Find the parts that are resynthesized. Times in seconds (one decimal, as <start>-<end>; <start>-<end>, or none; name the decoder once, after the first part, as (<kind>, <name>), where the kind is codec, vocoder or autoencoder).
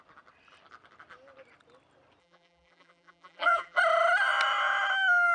2.2-3.8 (vocoder, BigVGAN v2)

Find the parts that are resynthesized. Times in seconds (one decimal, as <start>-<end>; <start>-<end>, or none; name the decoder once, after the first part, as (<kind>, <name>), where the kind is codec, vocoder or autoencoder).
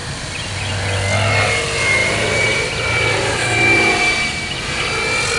2.0-4.9 (vocoder, BigVGAN v2)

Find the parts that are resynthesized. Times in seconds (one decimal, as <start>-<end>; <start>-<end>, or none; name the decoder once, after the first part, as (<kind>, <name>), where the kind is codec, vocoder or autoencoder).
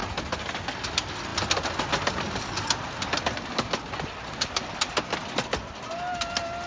none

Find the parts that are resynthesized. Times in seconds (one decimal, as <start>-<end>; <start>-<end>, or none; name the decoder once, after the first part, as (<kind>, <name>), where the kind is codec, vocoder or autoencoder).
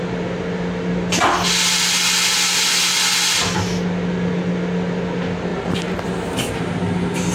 none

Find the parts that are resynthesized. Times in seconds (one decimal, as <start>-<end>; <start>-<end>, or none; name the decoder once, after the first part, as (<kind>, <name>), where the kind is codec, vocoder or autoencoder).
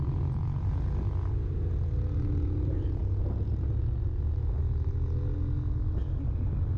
none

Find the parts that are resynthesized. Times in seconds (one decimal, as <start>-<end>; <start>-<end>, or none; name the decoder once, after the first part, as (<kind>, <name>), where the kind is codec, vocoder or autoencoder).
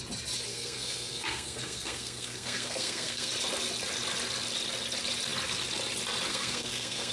0.5-3.3 (codec, SNAC); 6.3-7.1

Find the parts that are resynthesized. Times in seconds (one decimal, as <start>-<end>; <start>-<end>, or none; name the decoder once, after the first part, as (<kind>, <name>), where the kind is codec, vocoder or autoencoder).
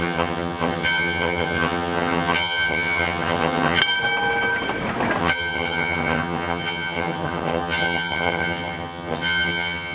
0.0-3.8 (vocoder, HiFi-GAN); 5.2-9.9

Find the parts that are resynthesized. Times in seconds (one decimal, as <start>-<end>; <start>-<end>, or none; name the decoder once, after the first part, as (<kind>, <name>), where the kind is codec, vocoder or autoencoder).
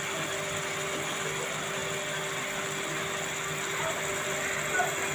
none